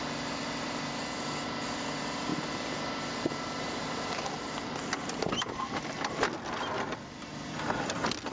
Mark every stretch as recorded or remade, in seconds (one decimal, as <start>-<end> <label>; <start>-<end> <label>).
0.0-8.3 recorded